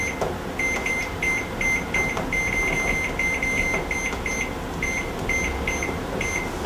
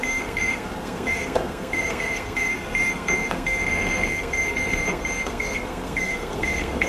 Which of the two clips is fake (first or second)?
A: second